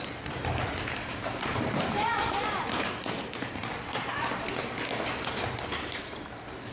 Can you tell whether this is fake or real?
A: fake